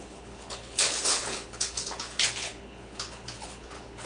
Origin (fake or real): fake